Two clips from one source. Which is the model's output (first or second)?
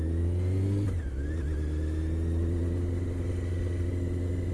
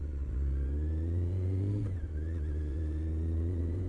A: second